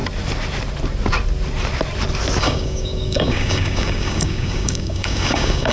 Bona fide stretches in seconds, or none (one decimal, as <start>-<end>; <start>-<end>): 0.0-2.4